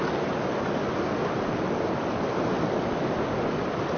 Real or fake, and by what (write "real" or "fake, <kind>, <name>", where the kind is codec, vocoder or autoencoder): real